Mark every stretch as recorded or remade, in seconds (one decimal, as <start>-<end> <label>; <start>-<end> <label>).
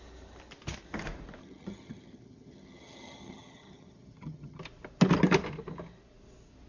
0.0-1.4 recorded; 1.4-4.6 remade; 4.6-6.7 recorded